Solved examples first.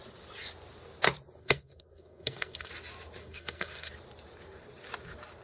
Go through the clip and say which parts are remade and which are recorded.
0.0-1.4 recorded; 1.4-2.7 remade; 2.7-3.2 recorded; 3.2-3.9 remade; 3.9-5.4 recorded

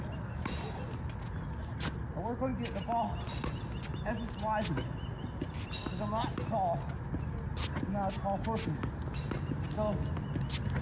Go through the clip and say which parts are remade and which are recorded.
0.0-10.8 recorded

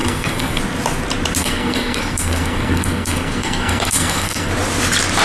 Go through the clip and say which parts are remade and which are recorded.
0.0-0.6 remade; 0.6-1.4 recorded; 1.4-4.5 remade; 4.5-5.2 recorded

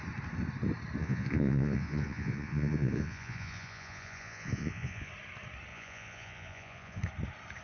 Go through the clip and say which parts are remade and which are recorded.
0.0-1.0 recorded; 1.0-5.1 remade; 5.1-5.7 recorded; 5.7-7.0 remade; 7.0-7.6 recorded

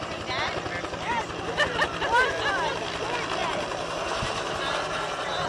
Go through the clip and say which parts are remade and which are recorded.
0.0-5.5 recorded

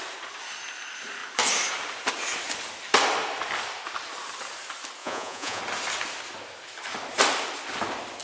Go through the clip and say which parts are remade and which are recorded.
0.0-5.0 recorded; 5.0-5.6 remade; 5.6-8.2 recorded